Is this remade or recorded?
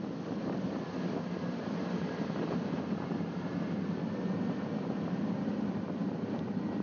recorded